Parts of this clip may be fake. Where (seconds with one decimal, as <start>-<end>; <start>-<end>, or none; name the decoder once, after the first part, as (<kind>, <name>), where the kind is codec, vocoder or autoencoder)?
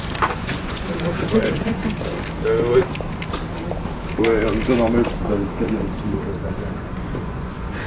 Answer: 0.0-1.8 (vocoder, Vocos); 6.5-7.9